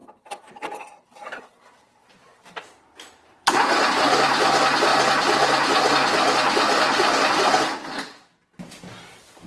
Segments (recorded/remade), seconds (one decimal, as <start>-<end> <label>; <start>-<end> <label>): 0.0-3.9 remade; 3.9-9.5 recorded